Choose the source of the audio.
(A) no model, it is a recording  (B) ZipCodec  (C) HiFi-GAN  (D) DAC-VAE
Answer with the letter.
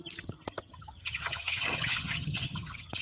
C